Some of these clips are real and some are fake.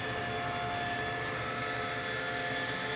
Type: real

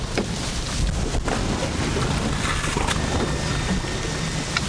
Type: real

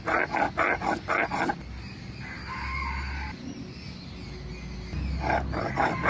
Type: real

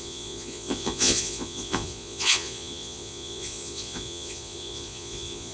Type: fake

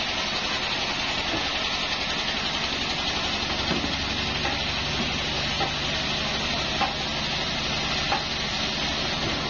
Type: real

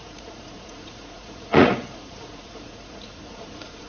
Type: fake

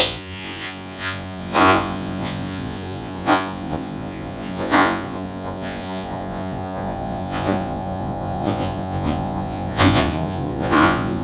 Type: fake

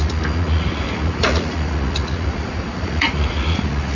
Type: fake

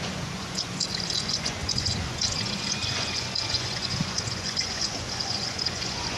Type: fake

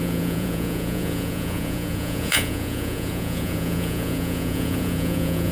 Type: fake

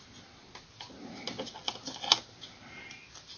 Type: real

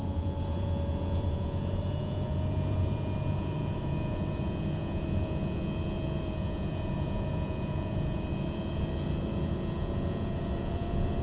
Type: fake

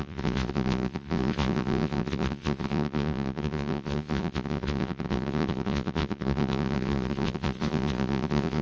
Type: fake